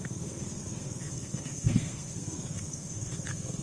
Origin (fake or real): fake